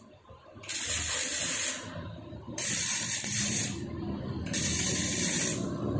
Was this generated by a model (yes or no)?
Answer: yes